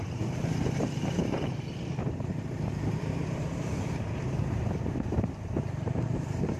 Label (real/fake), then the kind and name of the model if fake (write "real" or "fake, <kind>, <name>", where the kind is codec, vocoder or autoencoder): fake, vocoder, BigVGAN v2